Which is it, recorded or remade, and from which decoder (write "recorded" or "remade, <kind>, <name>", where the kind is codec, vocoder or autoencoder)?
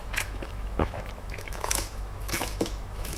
remade, autoencoder, DAC-VAE